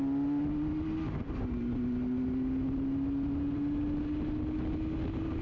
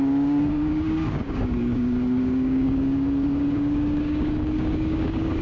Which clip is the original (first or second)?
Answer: first